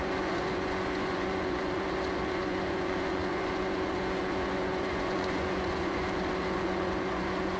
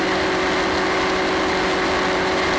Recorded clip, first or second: second